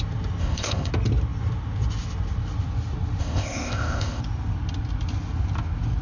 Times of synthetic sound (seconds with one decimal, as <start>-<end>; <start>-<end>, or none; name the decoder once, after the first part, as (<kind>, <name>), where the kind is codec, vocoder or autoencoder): 0.4-0.9 (codec, ZipCodec); 3.2-4.2